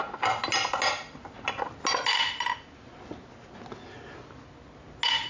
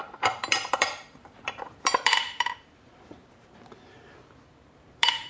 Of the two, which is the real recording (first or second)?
first